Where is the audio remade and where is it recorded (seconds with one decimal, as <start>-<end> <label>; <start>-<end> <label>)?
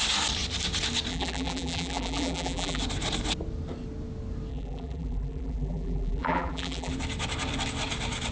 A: 0.0-1.1 recorded; 1.1-2.8 remade; 2.8-4.5 recorded; 4.5-6.9 remade; 6.9-8.3 recorded